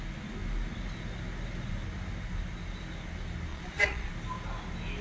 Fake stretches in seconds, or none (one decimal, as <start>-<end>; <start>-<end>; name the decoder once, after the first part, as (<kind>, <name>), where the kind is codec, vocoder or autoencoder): 3.5-4.1 (vocoder, Vocos)